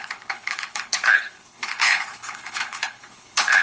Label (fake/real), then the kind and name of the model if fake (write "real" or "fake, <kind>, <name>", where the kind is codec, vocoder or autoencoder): fake, codec, HILCodec